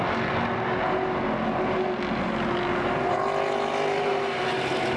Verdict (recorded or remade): recorded